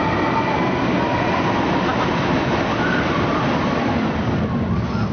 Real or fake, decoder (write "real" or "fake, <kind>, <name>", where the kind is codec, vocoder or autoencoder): real